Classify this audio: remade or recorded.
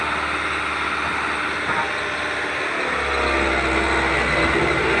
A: recorded